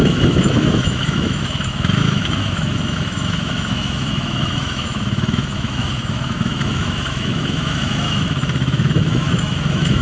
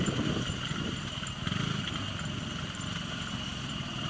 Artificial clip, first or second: first